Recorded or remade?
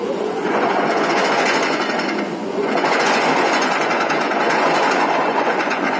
remade